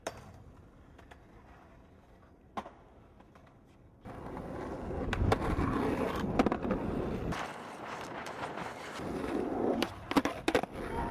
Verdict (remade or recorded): recorded